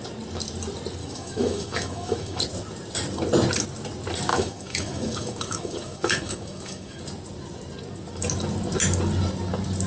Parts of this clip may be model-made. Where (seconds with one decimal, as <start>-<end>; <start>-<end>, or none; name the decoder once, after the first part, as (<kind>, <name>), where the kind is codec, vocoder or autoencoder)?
1.0-2.4 (autoencoder, DAC-VAE); 4.3-7.0